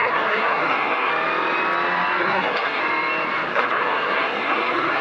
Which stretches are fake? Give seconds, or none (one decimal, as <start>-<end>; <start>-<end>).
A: 0.0-1.1; 2.2-2.8; 3.5-5.0